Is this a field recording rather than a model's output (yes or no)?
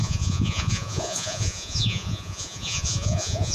no